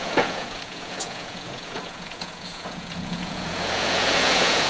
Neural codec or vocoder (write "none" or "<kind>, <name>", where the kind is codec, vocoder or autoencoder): vocoder, Vocos